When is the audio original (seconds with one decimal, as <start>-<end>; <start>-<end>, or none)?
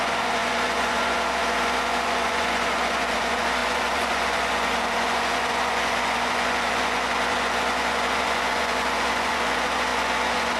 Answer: none